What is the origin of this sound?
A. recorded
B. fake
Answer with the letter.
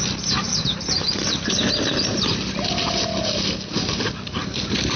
A